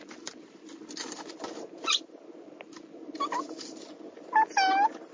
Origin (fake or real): real